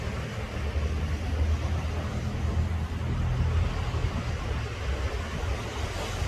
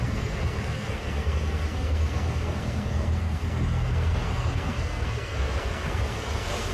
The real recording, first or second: first